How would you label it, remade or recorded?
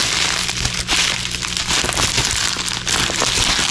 recorded